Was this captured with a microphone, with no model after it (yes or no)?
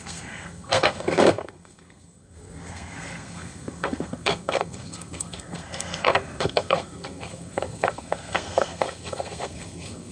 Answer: no